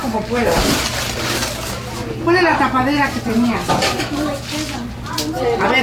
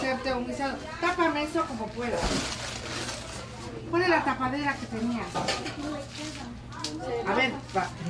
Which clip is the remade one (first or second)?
first